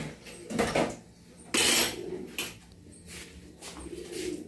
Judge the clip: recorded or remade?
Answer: recorded